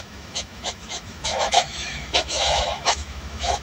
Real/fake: fake